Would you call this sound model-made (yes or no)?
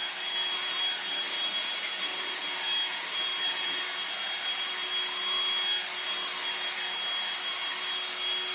no